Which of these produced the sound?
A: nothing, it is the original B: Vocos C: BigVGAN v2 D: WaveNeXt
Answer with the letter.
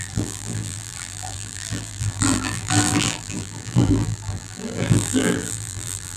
C